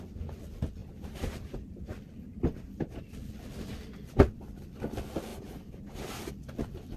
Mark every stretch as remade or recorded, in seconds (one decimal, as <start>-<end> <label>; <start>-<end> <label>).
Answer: 0.0-0.8 recorded; 0.8-1.8 remade; 1.8-2.3 recorded; 2.3-3.0 remade; 3.0-5.3 recorded; 5.3-6.3 remade; 6.3-7.0 recorded